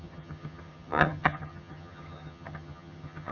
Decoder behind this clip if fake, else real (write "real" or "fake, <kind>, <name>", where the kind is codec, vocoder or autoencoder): fake, vocoder, HiFi-GAN